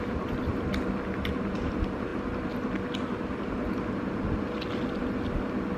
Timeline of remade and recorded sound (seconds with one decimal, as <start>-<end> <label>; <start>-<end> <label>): 0.0-5.8 recorded